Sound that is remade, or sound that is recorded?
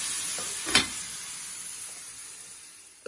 recorded